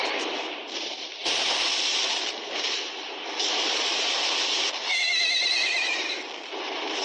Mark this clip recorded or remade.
remade